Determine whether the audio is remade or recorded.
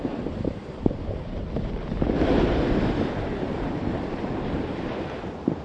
recorded